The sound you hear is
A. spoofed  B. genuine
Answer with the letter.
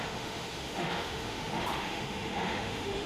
A